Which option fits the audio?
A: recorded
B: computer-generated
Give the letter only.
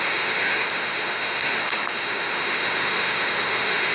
B